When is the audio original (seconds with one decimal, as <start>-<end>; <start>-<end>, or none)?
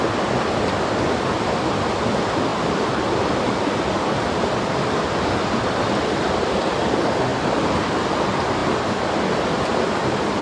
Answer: 0.0-2.5; 6.6-8.6